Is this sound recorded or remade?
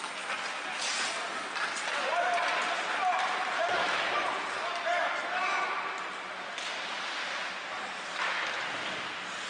recorded